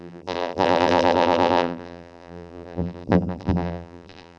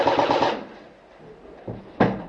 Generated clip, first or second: first